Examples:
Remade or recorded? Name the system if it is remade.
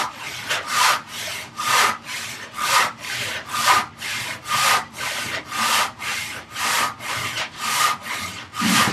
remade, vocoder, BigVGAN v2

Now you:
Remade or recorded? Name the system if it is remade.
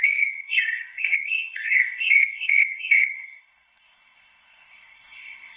remade, codec, SNAC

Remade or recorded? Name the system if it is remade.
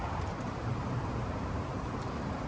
remade, vocoder, BigVGAN v2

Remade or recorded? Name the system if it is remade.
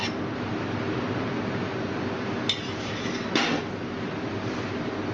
recorded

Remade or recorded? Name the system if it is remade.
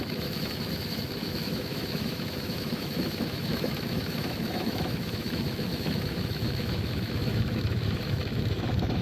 remade, autoencoder, DAC-VAE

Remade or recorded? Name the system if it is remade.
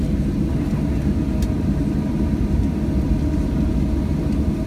recorded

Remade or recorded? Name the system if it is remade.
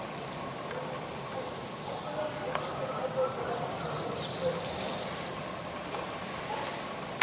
recorded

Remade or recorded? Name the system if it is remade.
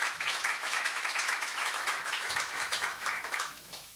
remade, autoencoder, DAC-VAE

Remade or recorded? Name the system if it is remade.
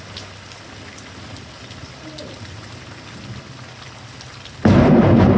recorded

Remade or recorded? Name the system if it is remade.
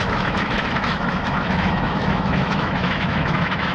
remade, autoencoder, DAC-VAE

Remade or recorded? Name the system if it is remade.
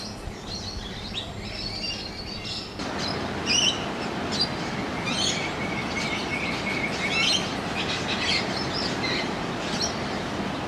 recorded